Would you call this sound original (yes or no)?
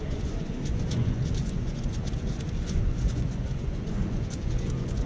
no